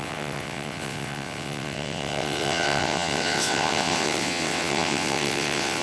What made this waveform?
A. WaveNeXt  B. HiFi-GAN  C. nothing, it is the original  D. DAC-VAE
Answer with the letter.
A